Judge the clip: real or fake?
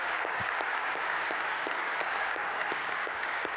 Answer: fake